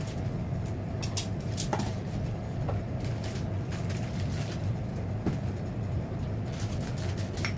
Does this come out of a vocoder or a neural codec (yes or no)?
no